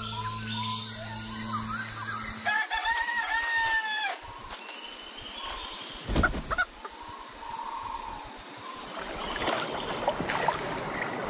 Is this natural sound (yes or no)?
yes